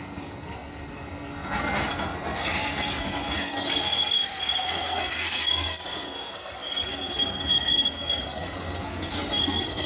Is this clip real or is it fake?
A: fake